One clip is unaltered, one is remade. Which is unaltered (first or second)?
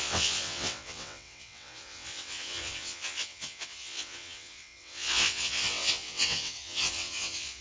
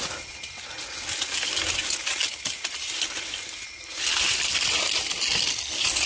second